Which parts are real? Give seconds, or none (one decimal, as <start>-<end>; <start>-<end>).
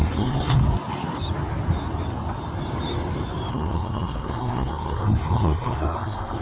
0.6-3.5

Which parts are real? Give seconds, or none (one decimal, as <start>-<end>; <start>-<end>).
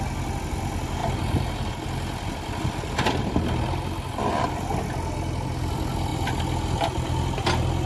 0.0-7.9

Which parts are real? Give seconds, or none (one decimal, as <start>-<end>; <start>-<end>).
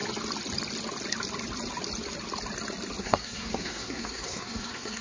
0.0-3.0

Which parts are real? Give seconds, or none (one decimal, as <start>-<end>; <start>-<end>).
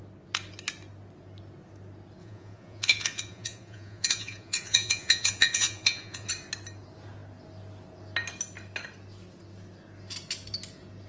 0.0-2.2; 6.3-11.1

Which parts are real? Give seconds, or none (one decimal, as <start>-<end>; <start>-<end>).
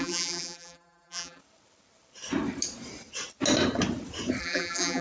1.4-4.4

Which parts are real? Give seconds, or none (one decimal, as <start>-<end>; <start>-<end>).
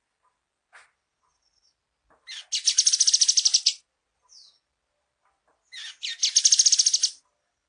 0.0-7.7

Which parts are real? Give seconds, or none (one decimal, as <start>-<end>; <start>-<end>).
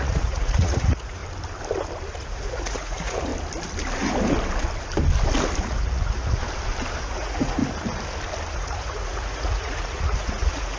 1.2-2.2; 3.3-5.6; 6.4-7.0; 7.6-8.5